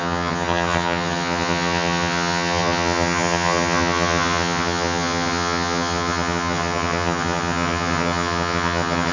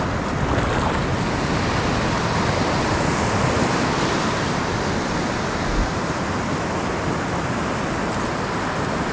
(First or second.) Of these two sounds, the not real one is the first